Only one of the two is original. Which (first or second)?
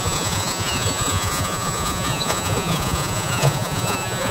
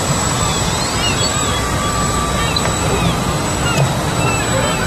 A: second